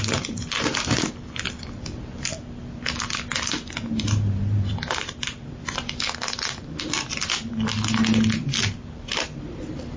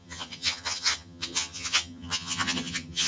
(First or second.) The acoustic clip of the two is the first